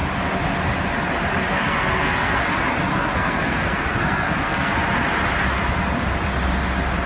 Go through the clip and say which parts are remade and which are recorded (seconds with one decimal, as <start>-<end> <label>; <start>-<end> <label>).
0.0-1.5 recorded; 1.5-2.4 remade; 2.4-2.9 recorded; 2.9-4.7 remade; 4.7-7.1 recorded

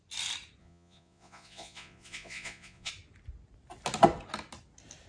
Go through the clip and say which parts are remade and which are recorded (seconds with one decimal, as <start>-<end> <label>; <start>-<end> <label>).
0.0-0.6 recorded; 0.6-2.9 remade; 2.9-5.1 recorded